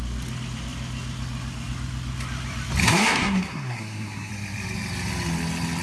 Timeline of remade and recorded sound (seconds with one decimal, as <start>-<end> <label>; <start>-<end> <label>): 0.0-2.8 recorded; 2.8-4.3 remade; 4.3-5.8 recorded

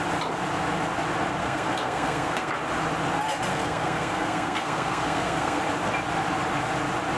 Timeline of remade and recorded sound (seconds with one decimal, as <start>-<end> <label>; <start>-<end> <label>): 0.0-1.4 recorded; 1.4-2.5 remade; 2.5-3.5 recorded; 3.5-5.6 remade; 5.6-7.2 recorded

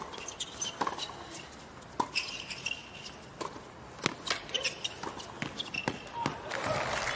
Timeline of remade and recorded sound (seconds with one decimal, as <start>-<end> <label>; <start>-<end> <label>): 0.0-7.2 recorded

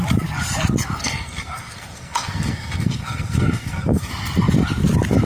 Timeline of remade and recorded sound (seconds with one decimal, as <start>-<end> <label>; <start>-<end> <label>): 0.0-1.0 recorded; 1.0-4.1 remade; 4.1-5.2 recorded